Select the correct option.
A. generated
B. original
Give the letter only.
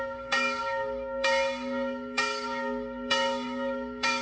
A